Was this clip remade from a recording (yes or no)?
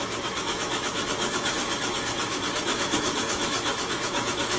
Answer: yes